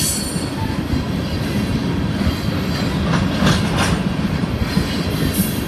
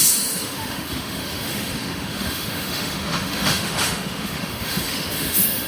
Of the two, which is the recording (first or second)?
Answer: first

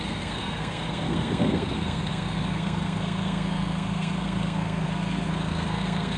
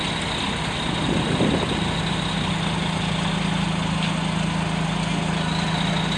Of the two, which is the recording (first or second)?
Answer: second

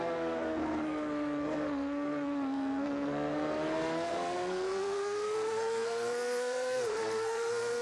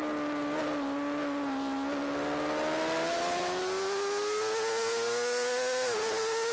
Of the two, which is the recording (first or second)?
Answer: second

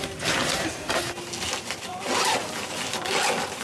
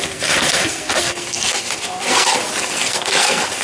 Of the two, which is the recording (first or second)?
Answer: first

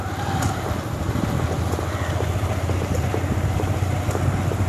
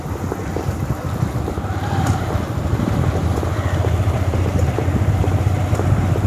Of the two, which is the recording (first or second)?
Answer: first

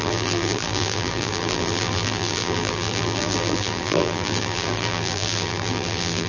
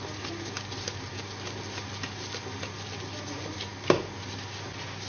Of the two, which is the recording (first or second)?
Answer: second